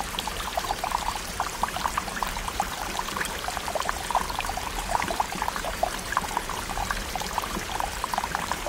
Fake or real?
fake